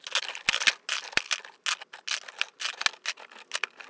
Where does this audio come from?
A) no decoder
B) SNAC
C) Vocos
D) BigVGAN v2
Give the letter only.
A